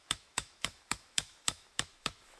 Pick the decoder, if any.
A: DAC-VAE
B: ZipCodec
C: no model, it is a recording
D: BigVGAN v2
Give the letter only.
A